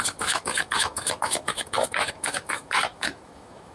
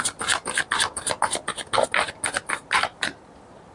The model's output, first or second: first